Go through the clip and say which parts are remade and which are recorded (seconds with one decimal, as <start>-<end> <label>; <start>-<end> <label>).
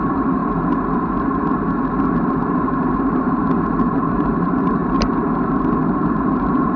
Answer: 0.0-0.4 remade; 0.4-2.3 recorded; 2.3-6.8 remade